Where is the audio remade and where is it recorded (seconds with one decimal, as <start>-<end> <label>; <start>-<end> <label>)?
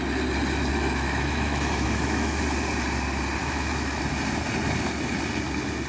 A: 0.0-0.7 recorded; 0.7-2.4 remade; 2.4-3.4 recorded; 3.4-4.0 remade; 4.0-5.9 recorded